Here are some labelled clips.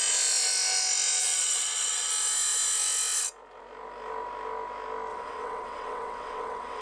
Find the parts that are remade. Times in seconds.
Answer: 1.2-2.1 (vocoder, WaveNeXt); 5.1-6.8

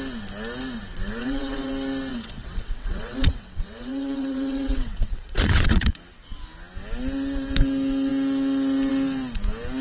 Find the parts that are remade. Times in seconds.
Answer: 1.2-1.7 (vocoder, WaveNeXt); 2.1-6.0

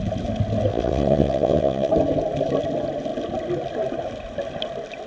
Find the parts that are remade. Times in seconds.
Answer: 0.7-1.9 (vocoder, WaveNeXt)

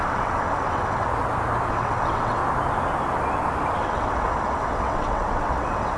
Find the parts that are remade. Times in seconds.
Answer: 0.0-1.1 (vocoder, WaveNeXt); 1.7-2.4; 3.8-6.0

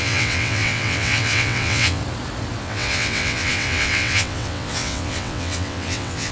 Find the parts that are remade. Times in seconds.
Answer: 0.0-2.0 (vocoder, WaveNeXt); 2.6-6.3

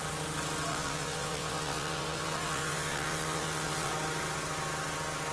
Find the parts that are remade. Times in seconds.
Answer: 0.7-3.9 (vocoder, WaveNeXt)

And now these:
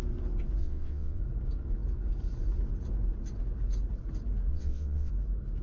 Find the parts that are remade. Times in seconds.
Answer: 0.6-1.2 (vocoder, WaveNeXt); 4.5-5.1

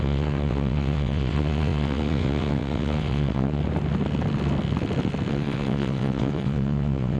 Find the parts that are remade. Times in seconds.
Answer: 0.0-3.6 (vocoder, WaveNeXt); 5.3-7.2